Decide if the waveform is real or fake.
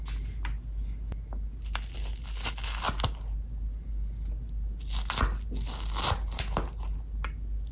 real